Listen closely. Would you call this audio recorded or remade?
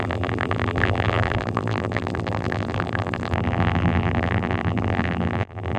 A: remade